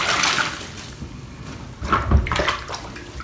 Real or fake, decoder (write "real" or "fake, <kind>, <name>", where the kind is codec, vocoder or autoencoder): real